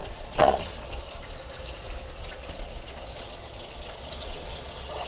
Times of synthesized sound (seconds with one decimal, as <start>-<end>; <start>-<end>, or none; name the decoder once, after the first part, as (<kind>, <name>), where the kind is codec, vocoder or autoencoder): 0.0-1.6 (vocoder, Vocos); 2.1-5.1